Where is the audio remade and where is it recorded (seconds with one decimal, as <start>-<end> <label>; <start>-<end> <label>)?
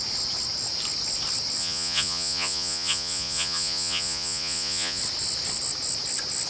0.0-1.6 recorded; 1.6-5.0 remade; 5.0-6.5 recorded